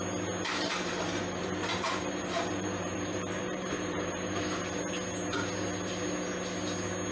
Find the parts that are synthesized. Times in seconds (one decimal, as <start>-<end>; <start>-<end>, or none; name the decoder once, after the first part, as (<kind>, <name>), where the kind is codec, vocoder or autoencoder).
0.5-4.8 (vocoder, BigVGAN v2)

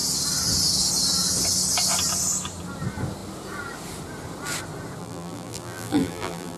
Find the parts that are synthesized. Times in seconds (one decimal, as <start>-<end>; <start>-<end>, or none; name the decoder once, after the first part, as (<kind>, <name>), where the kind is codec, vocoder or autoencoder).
5.0-6.6 (vocoder, BigVGAN v2)

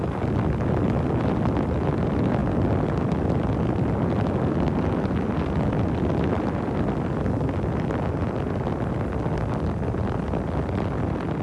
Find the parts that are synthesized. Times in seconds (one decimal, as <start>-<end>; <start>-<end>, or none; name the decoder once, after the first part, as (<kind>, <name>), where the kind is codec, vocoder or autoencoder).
none

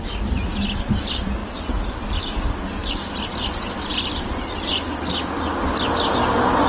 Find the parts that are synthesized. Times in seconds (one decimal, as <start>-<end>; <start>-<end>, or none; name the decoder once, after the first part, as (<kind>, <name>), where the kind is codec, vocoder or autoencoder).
0.0-1.4 (vocoder, BigVGAN v2); 2.4-6.7

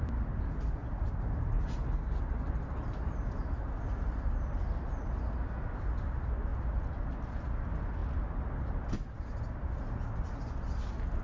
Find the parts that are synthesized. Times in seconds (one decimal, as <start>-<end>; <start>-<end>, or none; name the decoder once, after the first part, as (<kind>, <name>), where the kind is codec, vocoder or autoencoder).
0.8-1.9 (vocoder, BigVGAN v2); 6.5-7.0

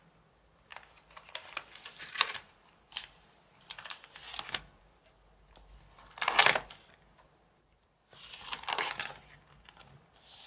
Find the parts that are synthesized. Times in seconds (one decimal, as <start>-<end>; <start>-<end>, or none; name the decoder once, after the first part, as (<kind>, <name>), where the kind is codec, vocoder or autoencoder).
none